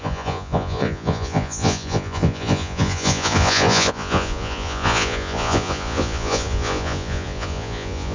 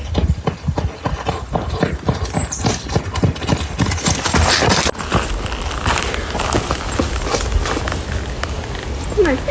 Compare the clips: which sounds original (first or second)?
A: second